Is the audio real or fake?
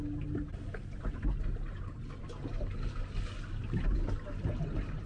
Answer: real